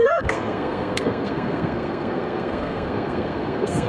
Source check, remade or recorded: remade